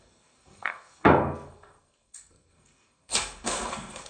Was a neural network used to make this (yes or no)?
yes